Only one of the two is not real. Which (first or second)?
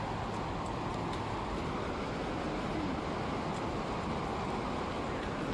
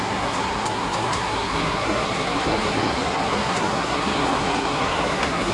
second